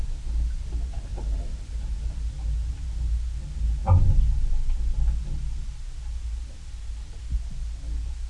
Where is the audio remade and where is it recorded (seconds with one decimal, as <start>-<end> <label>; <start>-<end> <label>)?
0.0-1.1 recorded; 1.1-1.8 remade; 1.8-8.3 recorded